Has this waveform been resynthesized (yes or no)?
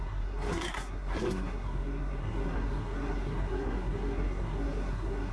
yes